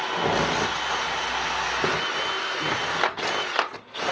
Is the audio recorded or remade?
recorded